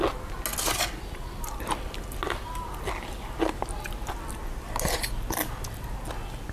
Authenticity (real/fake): real